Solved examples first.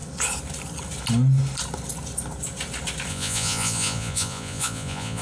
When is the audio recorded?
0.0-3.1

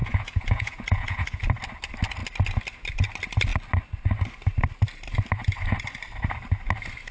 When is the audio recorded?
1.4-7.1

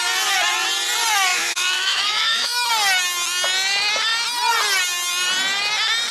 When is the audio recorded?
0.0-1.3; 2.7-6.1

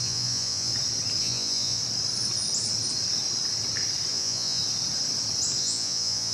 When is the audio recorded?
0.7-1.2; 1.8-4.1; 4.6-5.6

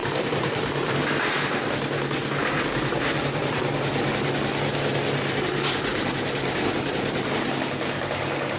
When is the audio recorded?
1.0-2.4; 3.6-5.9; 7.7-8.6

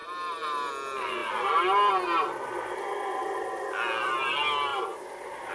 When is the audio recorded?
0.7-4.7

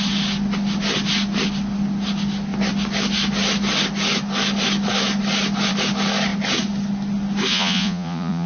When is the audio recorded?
0.0-7.5